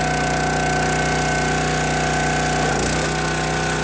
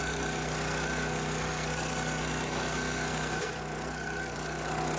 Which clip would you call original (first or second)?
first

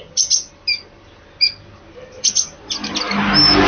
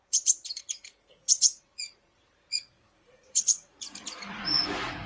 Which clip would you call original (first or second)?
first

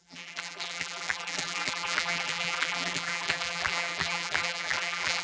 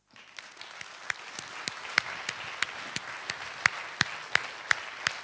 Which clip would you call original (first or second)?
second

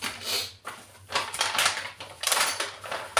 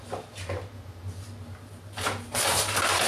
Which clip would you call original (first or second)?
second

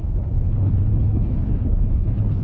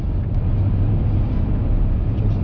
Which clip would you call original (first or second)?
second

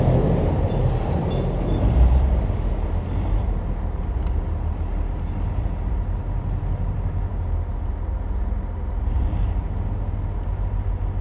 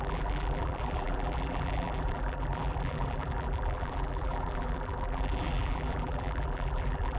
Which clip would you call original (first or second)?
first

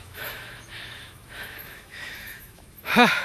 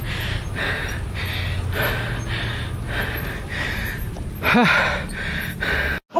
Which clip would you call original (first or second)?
second